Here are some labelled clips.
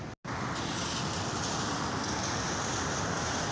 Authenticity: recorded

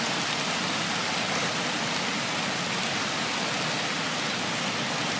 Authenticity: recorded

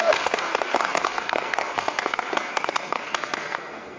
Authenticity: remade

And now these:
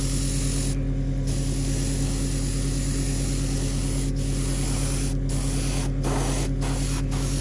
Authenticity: recorded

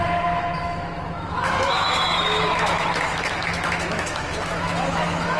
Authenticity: remade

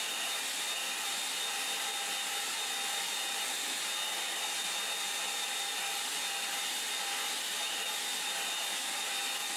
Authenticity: recorded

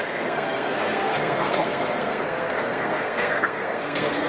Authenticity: remade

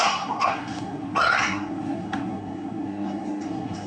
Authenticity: remade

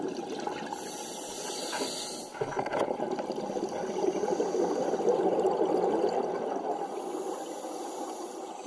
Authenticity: recorded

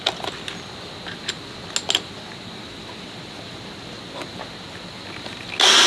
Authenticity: recorded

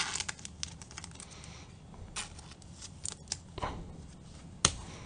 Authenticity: recorded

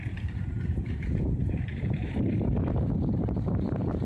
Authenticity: remade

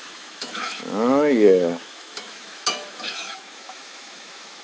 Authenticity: remade